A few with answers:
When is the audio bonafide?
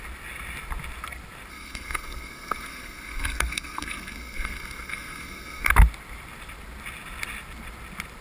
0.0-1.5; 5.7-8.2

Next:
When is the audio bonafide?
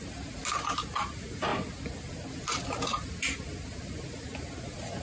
0.0-5.0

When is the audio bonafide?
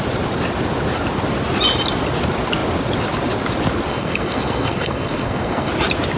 0.0-3.9; 5.7-6.2